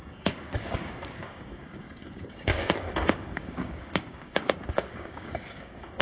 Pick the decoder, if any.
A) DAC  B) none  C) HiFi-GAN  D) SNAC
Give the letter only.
A